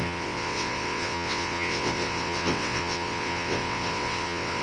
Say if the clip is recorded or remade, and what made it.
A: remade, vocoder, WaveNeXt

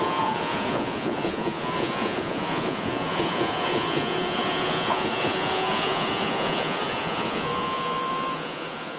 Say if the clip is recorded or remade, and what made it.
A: remade, vocoder, Vocos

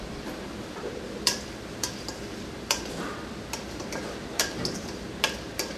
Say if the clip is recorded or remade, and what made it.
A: remade, vocoder, BigVGAN v2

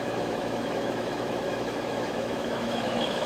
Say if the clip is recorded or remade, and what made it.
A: remade, autoencoder, DAC-VAE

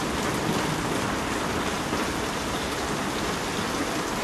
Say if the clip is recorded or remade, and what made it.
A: recorded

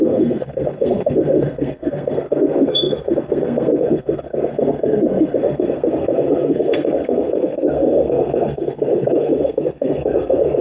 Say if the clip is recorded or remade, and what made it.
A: remade, codec, SNAC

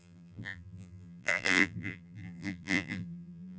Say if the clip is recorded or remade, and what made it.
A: remade, vocoder, BigVGAN v2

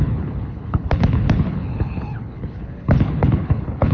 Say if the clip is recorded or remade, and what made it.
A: remade, codec, HILCodec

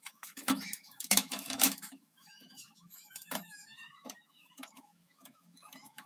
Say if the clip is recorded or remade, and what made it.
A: remade, autoencoder, DAC-VAE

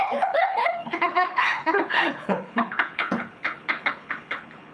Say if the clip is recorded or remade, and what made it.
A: remade, codec, HILCodec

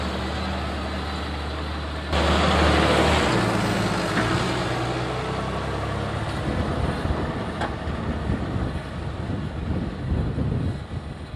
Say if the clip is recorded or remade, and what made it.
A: recorded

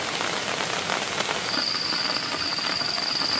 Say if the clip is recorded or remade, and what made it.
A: recorded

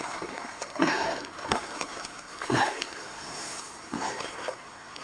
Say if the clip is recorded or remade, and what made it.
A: remade, codec, SNAC